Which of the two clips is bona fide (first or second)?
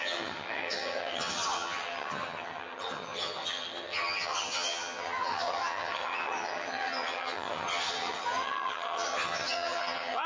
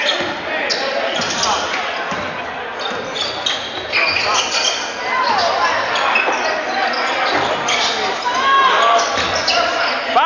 second